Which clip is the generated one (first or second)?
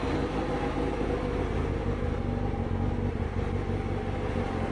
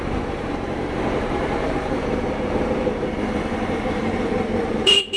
second